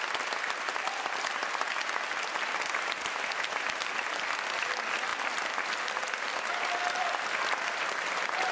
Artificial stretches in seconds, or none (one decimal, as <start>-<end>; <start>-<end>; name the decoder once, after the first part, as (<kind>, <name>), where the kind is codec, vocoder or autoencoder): none